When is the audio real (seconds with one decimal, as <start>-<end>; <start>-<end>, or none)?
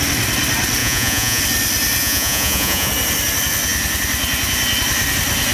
0.0-0.8; 1.4-2.0; 2.9-5.5